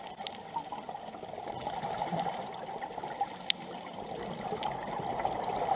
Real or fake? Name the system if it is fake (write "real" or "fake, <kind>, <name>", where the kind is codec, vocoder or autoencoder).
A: real